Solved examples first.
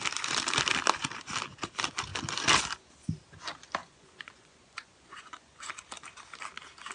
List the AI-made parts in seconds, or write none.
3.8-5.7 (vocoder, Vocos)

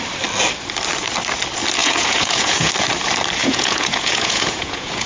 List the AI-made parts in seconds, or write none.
1.8-2.7 (vocoder, Vocos); 3.4-5.1